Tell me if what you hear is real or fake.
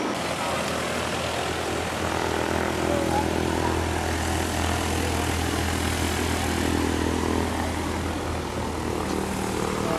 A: real